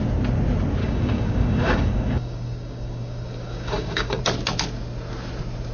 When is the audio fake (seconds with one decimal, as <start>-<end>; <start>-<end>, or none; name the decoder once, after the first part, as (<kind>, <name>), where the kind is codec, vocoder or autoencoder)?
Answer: 0.8-4.2 (codec, DAC)